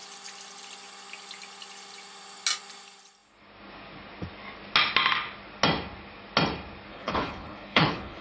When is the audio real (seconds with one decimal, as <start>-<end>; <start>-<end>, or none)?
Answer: 0.0-6.9